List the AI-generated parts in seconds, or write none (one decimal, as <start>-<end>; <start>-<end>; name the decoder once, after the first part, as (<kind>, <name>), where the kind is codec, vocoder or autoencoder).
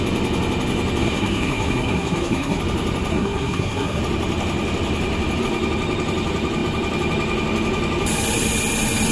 1.0-2.6 (codec, SNAC); 3.1-4.0